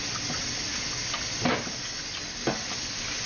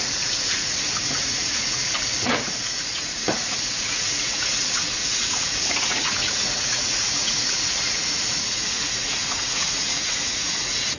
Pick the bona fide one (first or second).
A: first